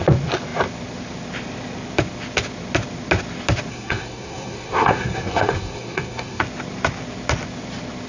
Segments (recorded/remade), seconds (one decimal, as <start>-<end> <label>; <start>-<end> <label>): 0.0-3.7 recorded; 3.7-6.4 remade; 6.4-8.1 recorded